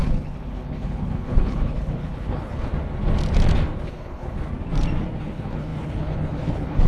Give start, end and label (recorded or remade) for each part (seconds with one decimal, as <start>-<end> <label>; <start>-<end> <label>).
0.0-2.7 remade; 2.7-3.8 recorded; 3.8-4.5 remade; 4.5-5.2 recorded; 5.2-6.9 remade